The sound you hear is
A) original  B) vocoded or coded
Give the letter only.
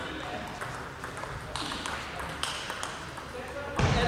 A